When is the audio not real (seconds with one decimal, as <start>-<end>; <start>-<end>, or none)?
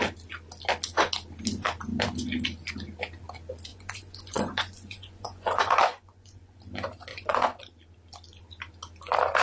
3.7-6.6; 7.1-7.6